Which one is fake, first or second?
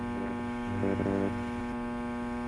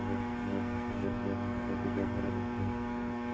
second